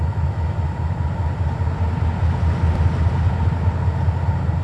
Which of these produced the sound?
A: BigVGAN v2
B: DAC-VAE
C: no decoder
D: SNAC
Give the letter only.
C